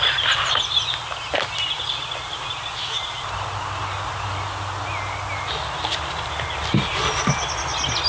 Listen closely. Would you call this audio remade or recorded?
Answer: recorded